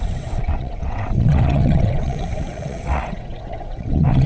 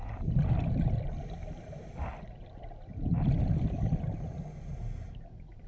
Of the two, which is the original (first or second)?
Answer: second